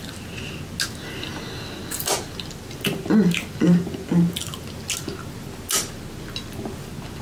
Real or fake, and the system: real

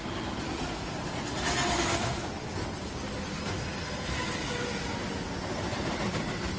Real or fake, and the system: real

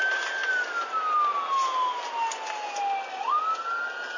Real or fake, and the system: real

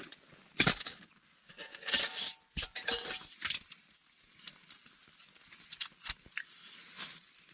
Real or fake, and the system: real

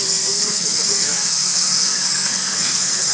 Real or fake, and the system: fake, codec, SNAC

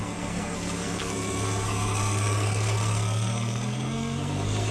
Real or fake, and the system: fake, codec, SNAC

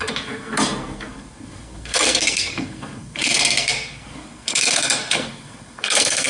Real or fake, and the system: fake, codec, SNAC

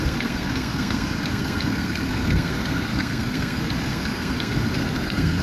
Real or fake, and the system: fake, codec, SNAC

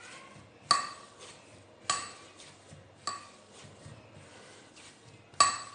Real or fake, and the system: real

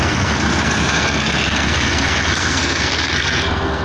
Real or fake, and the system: fake, codec, SNAC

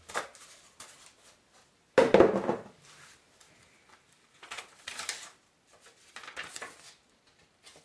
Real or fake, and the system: real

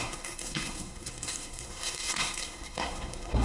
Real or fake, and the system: fake, codec, SNAC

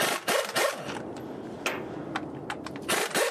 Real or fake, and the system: real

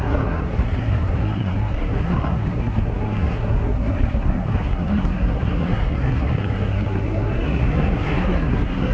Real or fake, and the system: fake, codec, SNAC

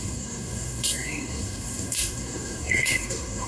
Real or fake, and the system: fake, codec, SNAC